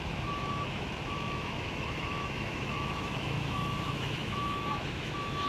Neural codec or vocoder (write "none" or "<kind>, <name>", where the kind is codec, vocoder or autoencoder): autoencoder, DAC-VAE